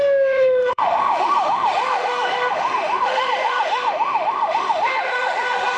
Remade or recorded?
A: remade